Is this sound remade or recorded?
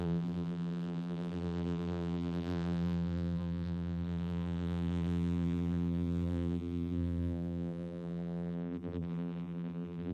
remade